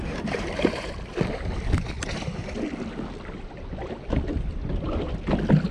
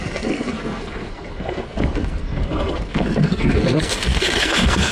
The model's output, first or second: second